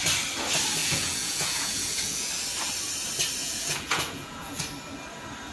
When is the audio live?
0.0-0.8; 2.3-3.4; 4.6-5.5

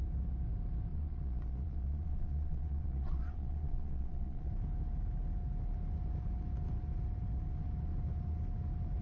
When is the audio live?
0.0-0.9; 4.5-9.0

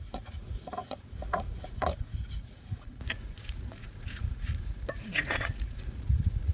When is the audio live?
none

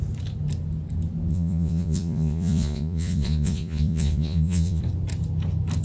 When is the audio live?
0.0-1.3; 4.8-5.8

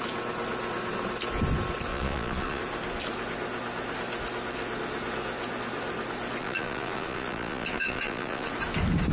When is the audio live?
0.0-1.9; 2.6-6.4; 8.5-9.1

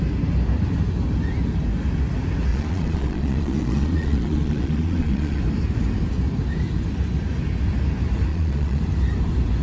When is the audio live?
0.0-2.5; 5.4-8.3; 8.8-9.6

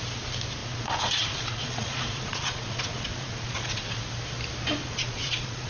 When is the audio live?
0.0-0.6; 4.0-4.8